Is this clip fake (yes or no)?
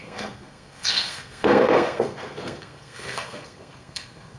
yes